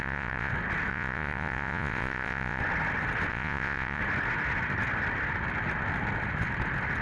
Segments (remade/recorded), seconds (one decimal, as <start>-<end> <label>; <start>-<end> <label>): 0.0-0.5 remade; 0.5-0.9 recorded; 0.9-2.6 remade; 2.6-3.3 recorded; 3.3-4.0 remade; 4.0-7.0 recorded